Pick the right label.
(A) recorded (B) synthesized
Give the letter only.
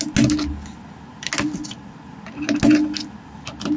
A